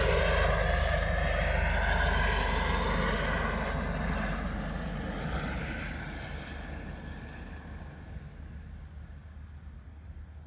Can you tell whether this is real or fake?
real